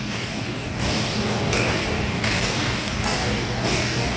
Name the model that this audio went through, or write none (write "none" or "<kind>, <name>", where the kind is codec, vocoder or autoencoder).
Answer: codec, DAC